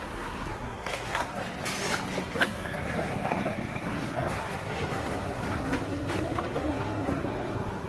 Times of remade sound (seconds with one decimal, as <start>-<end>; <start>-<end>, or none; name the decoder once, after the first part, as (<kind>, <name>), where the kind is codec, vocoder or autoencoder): 0.0-1.4 (codec, SNAC); 2.2-7.9